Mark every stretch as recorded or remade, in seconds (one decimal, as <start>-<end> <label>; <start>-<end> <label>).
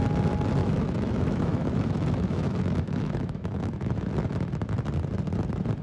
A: 0.0-0.6 recorded; 0.6-4.1 remade; 4.1-5.8 recorded